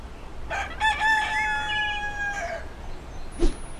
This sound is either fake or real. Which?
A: real